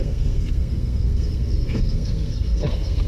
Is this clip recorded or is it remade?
remade